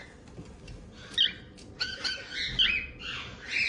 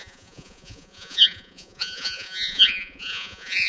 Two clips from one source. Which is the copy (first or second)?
second